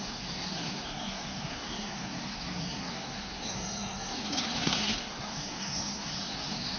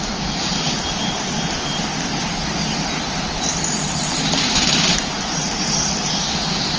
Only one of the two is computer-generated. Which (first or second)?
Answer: first